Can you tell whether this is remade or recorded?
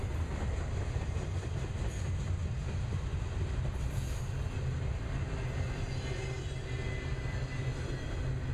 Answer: recorded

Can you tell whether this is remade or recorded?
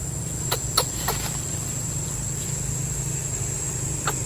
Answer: remade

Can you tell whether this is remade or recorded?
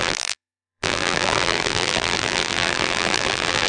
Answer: remade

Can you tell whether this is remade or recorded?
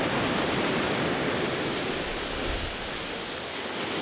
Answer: recorded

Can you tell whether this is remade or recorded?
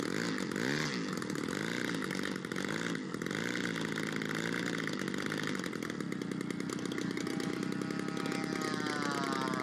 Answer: recorded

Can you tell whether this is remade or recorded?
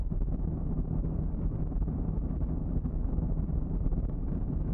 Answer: remade